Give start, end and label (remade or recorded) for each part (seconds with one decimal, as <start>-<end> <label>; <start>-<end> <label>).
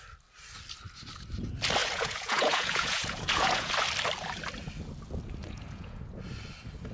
0.0-1.8 recorded; 1.8-3.7 remade; 3.7-5.4 recorded; 5.4-6.0 remade; 6.0-6.9 recorded